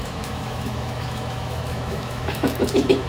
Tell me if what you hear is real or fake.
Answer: fake